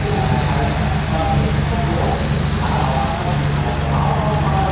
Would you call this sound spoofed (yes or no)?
no